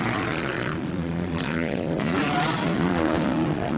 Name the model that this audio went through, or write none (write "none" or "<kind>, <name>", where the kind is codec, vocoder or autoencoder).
vocoder, Vocos